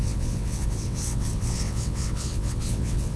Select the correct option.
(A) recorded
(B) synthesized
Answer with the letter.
B